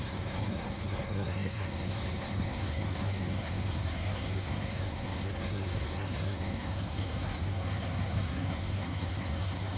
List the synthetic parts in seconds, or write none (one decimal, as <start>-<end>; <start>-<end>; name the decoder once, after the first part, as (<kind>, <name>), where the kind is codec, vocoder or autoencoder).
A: 0.0-9.8 (codec, SNAC)